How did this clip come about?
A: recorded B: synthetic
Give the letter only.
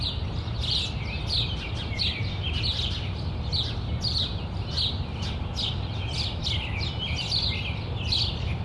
A